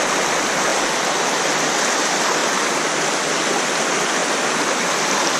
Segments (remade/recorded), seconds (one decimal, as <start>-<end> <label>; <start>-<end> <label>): 0.0-5.4 recorded